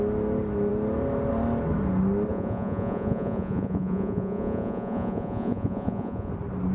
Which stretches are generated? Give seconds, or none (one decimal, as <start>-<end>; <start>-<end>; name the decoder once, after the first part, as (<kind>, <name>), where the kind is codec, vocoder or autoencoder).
2.3-6.3 (vocoder, Vocos)

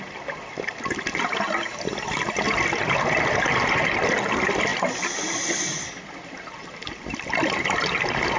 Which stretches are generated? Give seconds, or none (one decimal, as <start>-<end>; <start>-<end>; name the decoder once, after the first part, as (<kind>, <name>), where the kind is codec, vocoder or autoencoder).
none

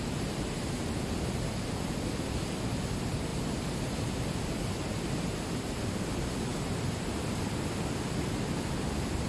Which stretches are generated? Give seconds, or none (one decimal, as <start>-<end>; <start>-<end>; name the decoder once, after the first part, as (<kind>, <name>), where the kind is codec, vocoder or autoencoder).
none

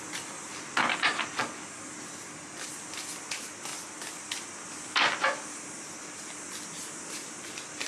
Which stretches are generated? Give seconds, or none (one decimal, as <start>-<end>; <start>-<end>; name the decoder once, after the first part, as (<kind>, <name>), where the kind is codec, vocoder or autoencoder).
none

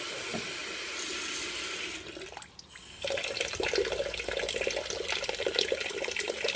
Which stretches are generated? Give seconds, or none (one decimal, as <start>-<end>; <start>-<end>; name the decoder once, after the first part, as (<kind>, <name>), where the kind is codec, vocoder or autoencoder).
none